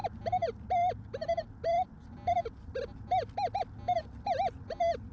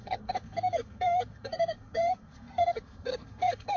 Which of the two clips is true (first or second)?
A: first